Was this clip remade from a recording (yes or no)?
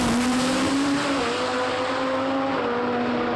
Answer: no